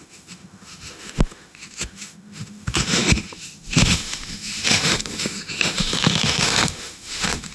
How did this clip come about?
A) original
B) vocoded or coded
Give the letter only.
B